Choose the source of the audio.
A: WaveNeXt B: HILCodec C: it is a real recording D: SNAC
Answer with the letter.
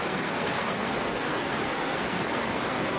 D